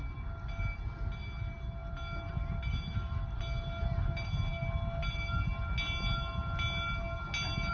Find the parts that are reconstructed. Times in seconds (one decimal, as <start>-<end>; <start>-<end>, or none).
none